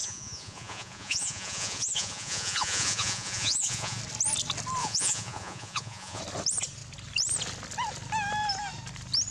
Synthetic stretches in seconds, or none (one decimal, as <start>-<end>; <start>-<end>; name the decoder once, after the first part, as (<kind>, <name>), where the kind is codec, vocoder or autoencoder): 0.0-4.0 (vocoder, Vocos); 4.8-6.2